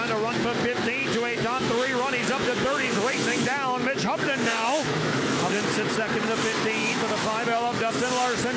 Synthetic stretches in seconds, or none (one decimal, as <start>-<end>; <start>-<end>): 1.0-5.5; 6.8-7.9